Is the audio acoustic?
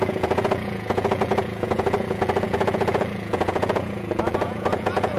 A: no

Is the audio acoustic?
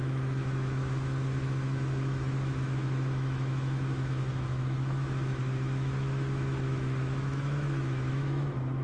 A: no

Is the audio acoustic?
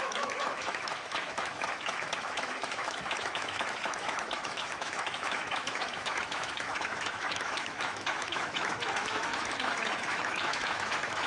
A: no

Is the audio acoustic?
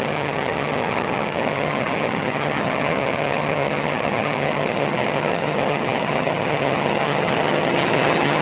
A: no